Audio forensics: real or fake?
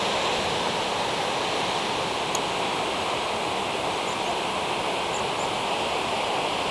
real